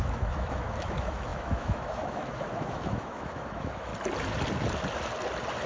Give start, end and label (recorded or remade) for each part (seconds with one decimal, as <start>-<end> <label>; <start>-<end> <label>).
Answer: 0.0-3.9 remade; 3.9-5.7 recorded